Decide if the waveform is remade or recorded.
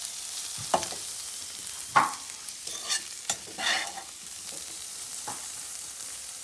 remade